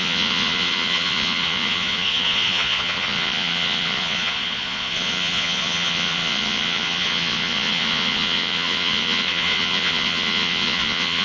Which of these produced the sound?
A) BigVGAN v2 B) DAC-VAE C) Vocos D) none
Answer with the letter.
C